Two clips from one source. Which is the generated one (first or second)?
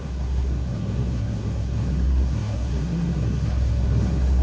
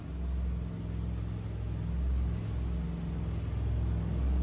first